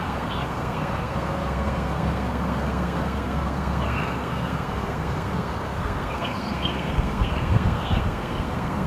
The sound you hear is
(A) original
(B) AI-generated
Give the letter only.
B